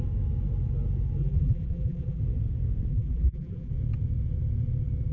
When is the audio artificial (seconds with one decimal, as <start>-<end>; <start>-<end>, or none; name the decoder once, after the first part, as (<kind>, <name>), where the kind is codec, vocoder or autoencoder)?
1.2-2.2 (vocoder, BigVGAN v2); 2.9-3.7